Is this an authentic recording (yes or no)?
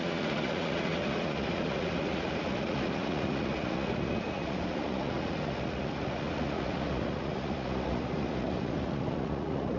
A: no